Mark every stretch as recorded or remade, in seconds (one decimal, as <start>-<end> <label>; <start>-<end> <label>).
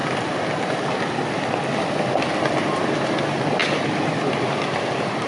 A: 0.0-5.3 recorded